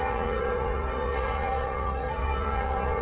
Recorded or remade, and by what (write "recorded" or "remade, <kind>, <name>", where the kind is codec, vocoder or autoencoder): remade, vocoder, Vocos